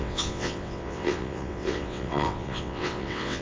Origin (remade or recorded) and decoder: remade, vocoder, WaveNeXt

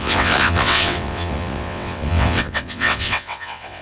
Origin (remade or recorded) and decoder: remade, vocoder, WaveNeXt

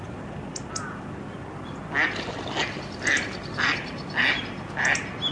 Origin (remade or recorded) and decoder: recorded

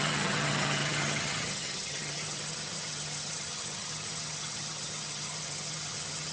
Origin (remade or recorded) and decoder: remade, vocoder, HiFi-GAN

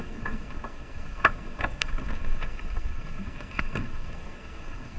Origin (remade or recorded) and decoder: remade, codec, SNAC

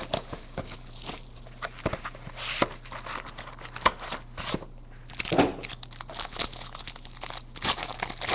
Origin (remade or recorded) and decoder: recorded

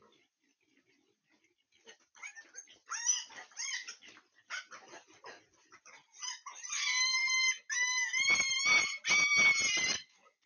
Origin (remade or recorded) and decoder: recorded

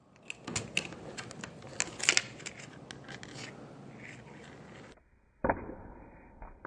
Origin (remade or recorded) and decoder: recorded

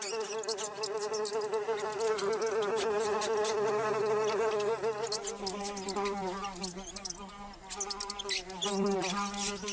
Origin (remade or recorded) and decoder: recorded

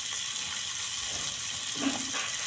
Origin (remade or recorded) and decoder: recorded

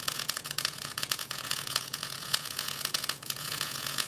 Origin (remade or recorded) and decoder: remade, vocoder, Vocos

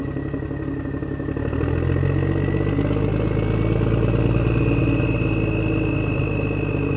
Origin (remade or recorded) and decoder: recorded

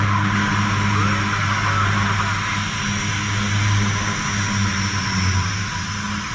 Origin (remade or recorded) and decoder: recorded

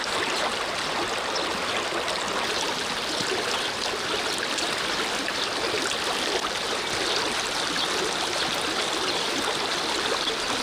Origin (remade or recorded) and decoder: recorded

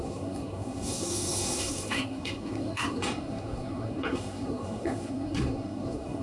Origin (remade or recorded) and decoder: remade, codec, SNAC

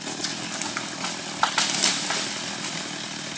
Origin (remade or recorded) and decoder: recorded